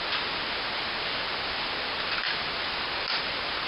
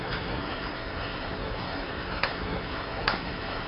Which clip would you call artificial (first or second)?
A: second